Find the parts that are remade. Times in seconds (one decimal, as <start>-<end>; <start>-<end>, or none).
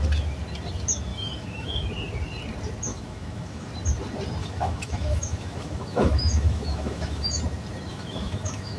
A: 1.1-1.9; 2.9-3.7; 4.4-7.4; 7.9-8.8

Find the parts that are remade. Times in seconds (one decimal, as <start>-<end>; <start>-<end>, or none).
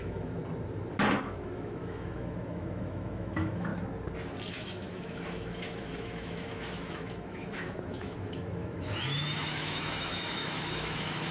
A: 0.0-0.4; 1.2-3.7; 4.5-11.3